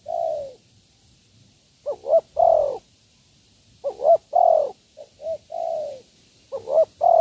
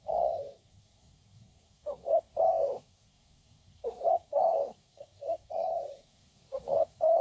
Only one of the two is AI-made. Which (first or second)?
second